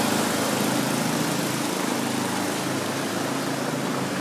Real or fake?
real